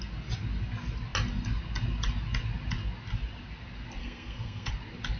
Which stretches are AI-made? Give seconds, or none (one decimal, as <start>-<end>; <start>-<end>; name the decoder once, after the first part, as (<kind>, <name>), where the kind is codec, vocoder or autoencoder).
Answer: 4.0-4.7 (codec, SNAC)